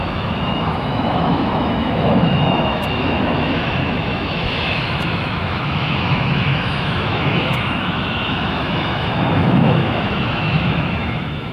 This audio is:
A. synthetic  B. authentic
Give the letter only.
A